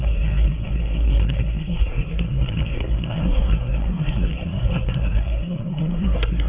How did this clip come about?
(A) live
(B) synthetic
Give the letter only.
B